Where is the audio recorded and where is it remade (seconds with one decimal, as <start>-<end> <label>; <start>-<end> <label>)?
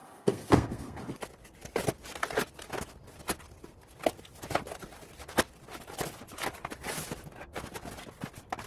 0.0-1.0 remade; 1.0-8.7 recorded